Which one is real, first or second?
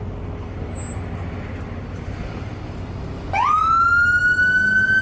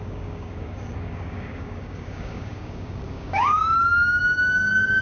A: first